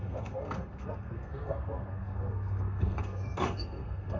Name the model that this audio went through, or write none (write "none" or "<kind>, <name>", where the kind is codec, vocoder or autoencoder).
codec, SNAC